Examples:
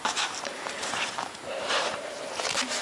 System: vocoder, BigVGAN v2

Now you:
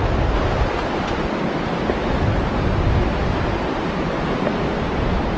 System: none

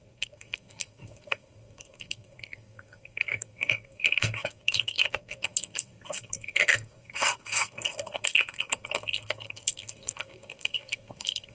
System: codec, SNAC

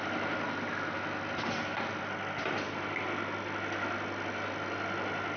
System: none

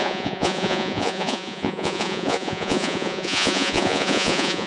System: vocoder, Vocos